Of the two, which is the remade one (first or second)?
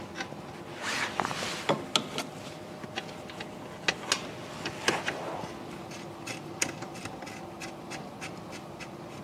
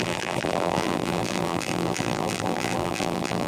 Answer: second